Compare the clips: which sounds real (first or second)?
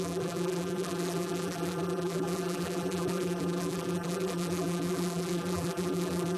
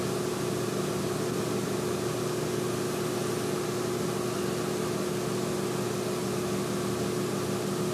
second